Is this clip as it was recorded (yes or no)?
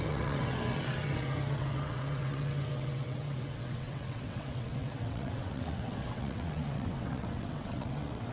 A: no